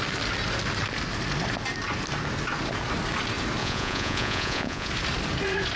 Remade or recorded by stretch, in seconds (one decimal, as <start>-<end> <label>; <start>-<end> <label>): 0.0-3.6 recorded; 3.6-4.9 remade; 4.9-5.8 recorded